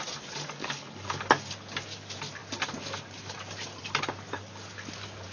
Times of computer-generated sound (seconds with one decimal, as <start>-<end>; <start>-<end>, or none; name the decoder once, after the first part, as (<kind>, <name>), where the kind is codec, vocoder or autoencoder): 0.6-1.2 (codec, HILCodec)